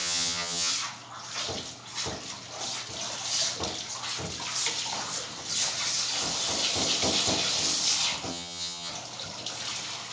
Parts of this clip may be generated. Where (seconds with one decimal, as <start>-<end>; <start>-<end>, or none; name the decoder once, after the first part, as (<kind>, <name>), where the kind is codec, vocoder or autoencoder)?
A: 0.0-0.7 (vocoder, HiFi-GAN); 8.3-8.9